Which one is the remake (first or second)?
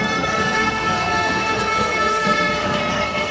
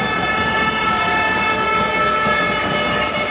first